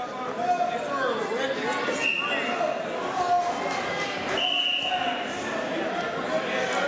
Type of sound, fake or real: real